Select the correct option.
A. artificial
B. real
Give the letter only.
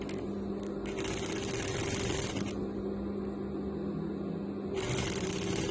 B